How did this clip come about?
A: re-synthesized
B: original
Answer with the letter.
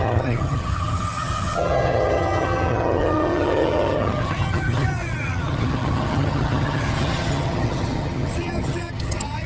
A